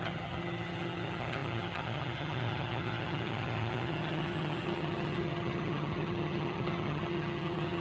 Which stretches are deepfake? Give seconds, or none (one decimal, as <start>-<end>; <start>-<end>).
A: 0.0-7.8